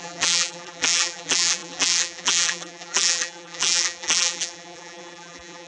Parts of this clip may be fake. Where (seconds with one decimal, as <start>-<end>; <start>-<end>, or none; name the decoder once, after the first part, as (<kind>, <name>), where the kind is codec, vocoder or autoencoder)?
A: 0.0-5.7 (vocoder, BigVGAN v2)